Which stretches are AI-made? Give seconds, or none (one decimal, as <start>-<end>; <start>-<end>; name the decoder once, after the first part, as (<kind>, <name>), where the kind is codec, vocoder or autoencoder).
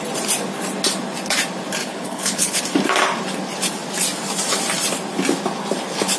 1.8-2.6 (codec, HILCodec)